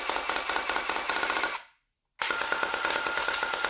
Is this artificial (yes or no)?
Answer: no